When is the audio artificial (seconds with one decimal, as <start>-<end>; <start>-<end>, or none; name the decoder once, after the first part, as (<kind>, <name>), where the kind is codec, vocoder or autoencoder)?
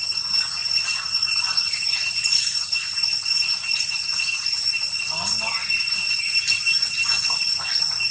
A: 0.6-4.8 (vocoder, Vocos); 5.6-6.1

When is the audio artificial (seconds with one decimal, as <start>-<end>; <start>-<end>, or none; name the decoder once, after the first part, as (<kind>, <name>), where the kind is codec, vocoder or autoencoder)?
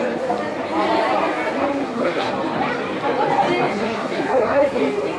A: 1.7-2.3 (codec, SNAC); 3.7-4.8